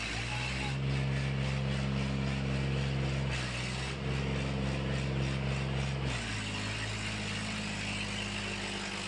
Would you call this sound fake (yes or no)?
no